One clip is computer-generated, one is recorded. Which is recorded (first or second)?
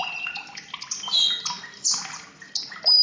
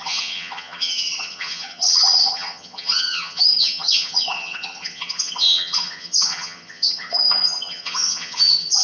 first